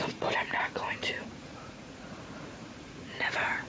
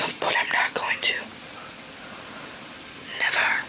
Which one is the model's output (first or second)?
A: first